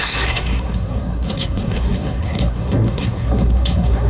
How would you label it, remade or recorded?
remade